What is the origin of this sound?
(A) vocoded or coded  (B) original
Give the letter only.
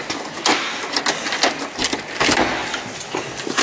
B